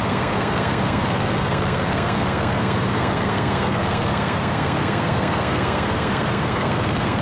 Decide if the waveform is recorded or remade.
remade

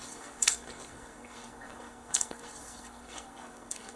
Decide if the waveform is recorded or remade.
remade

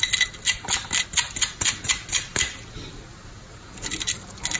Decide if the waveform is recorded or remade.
recorded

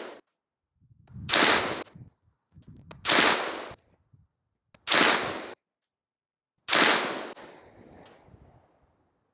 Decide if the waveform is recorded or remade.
recorded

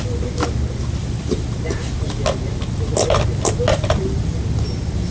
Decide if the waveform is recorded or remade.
recorded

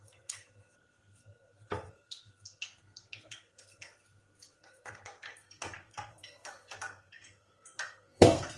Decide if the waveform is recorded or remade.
remade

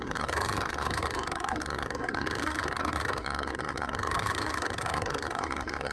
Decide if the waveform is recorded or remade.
remade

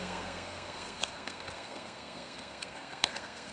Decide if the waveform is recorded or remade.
remade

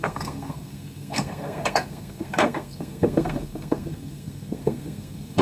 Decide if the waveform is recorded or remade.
remade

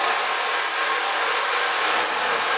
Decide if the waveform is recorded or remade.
recorded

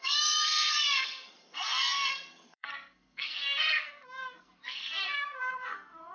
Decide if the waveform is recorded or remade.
remade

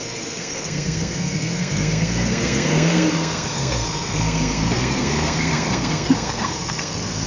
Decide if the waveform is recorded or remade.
remade